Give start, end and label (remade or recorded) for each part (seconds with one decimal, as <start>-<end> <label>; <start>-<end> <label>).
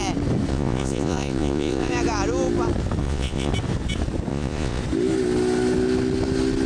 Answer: 0.0-0.5 recorded; 0.5-1.9 remade; 1.9-3.0 recorded; 3.0-3.5 remade; 3.5-4.3 recorded; 4.3-4.8 remade; 4.8-6.7 recorded